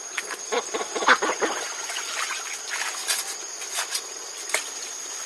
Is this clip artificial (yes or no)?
no